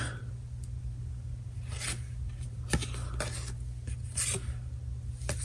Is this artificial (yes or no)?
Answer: no